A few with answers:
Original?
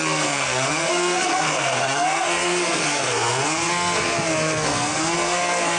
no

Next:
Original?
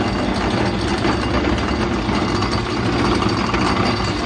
yes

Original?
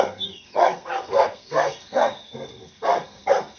no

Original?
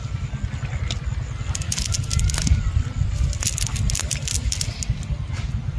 yes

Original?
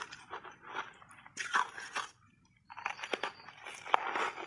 yes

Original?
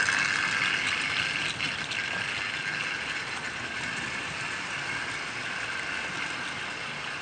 yes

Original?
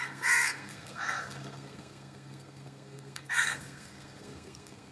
no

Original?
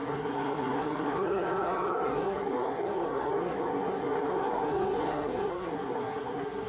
no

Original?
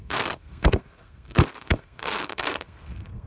no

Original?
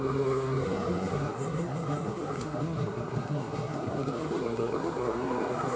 no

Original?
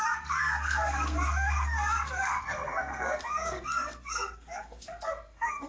no